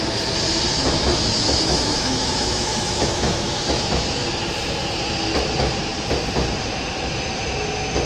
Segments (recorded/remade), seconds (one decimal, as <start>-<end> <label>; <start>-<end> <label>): 0.0-0.7 recorded; 0.7-4.2 remade; 4.2-8.1 recorded